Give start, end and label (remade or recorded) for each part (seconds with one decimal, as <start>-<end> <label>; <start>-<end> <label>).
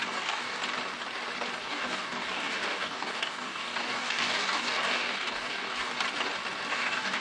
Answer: 0.0-0.6 remade; 0.6-1.6 recorded; 1.6-5.9 remade; 5.9-6.7 recorded; 6.7-7.2 remade